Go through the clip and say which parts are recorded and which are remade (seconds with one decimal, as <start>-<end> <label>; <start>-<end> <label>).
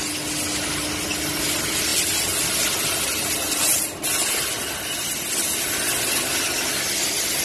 0.0-7.4 recorded